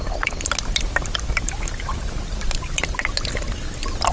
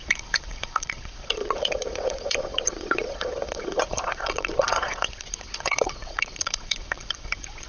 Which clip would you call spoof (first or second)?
second